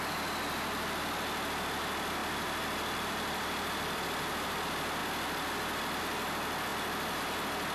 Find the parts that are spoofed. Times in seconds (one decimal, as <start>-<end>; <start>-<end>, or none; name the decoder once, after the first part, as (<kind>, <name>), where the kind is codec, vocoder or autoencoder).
2.2-4.6 (vocoder, BigVGAN v2); 6.7-7.2